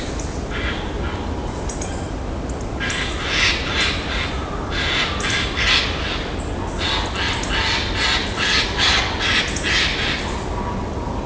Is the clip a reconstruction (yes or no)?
no